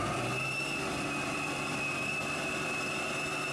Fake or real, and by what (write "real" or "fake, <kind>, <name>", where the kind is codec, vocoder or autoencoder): fake, vocoder, BigVGAN v2